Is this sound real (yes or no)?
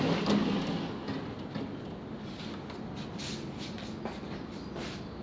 yes